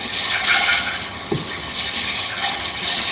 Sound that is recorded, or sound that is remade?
remade